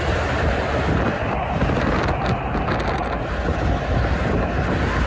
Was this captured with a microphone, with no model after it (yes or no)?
yes